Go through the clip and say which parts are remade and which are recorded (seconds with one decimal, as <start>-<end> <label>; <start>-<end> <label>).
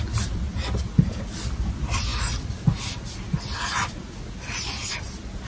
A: 0.0-5.5 recorded